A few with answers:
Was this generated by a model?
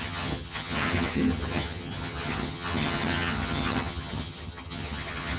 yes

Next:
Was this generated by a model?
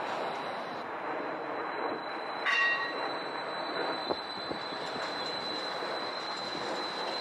yes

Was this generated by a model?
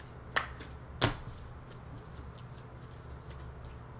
no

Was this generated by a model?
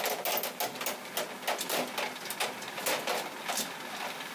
no